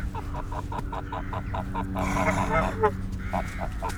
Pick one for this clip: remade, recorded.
recorded